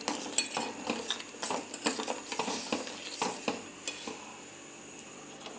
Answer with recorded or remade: recorded